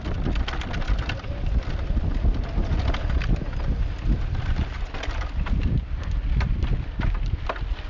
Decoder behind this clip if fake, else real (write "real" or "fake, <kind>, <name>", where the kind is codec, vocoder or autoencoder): real